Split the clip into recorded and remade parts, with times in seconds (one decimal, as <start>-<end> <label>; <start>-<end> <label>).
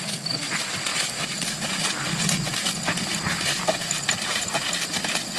0.0-0.9 recorded; 0.9-2.1 remade; 2.1-3.1 recorded; 3.1-4.9 remade; 4.9-5.4 recorded